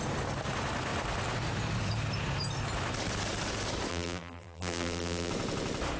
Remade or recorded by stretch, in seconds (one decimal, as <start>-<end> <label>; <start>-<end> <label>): 0.0-3.9 recorded; 3.9-5.3 remade; 5.3-6.0 recorded